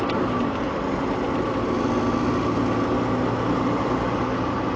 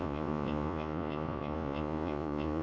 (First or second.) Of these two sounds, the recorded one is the first